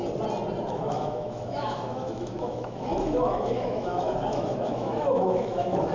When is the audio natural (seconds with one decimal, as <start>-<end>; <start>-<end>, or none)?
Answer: 0.0-0.7